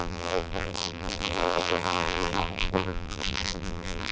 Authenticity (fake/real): fake